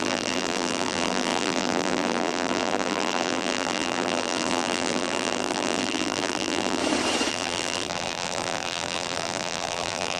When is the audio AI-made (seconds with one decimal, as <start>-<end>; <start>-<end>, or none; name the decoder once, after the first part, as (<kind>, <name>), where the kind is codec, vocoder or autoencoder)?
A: 0.0-6.8 (vocoder, BigVGAN v2); 7.3-10.2